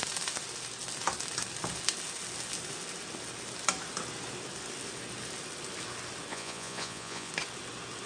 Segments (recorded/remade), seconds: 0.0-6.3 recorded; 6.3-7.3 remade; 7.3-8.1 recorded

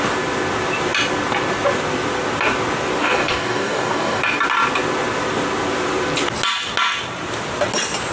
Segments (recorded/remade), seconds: 0.0-3.0 recorded; 3.0-4.2 remade; 4.2-8.1 recorded

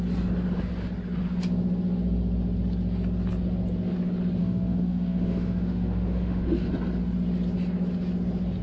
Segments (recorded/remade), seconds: 0.0-4.4 recorded; 4.4-6.7 remade; 6.7-8.6 recorded

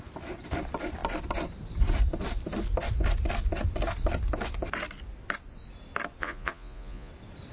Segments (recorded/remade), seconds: 0.0-6.2 recorded; 6.2-7.1 remade; 7.1-7.5 recorded

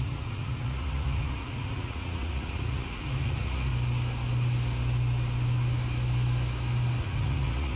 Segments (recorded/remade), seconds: 0.0-3.7 remade; 3.7-7.0 recorded; 7.0-7.8 remade

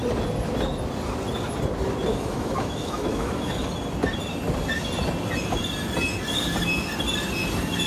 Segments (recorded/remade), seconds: 0.0-2.1 recorded; 2.1-3.7 remade; 3.7-7.9 recorded